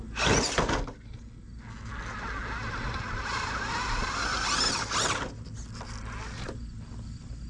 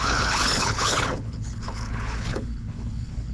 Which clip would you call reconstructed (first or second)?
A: second